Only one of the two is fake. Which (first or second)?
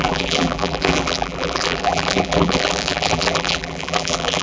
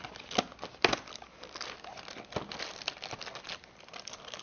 first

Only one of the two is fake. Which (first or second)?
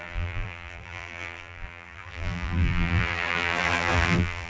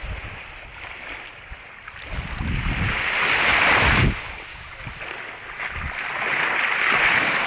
first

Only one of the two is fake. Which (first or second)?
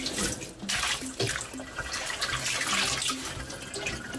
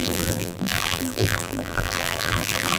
second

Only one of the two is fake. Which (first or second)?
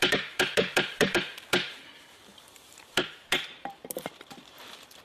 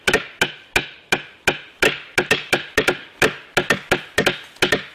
first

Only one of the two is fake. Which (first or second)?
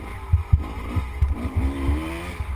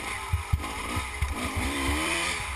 second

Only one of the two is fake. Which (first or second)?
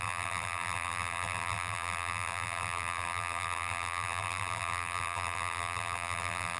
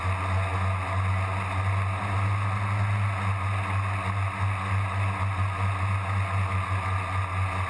first